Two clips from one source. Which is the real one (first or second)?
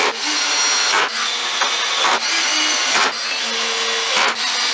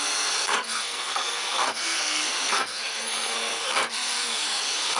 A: first